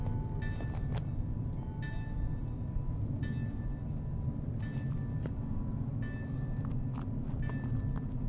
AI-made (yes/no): no